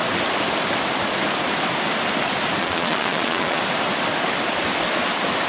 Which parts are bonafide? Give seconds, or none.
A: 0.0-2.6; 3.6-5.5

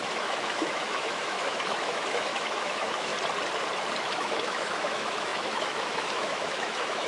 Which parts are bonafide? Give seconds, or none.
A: 3.1-4.0

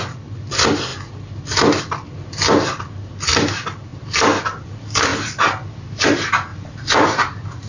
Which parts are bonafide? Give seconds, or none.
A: 0.0-6.5

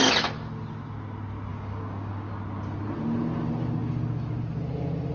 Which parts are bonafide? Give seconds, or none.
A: 0.0-1.5; 2.3-5.1

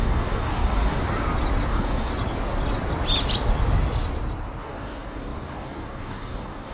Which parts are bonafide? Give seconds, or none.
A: 1.0-1.7; 2.1-4.6

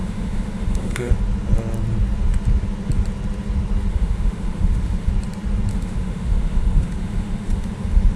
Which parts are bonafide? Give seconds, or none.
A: 1.1-3.9; 5.1-5.7